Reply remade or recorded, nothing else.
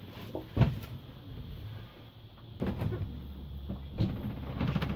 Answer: recorded